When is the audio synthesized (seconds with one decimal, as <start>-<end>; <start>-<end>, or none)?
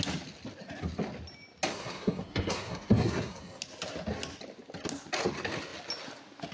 1.7-3.6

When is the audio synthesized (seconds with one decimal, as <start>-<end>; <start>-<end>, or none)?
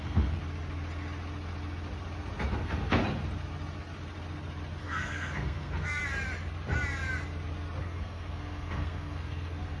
0.0-0.4; 2.5-3.0; 4.8-6.0; 7.8-9.8